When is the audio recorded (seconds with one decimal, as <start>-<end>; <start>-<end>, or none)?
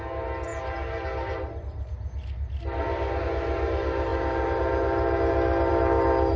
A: 0.0-6.4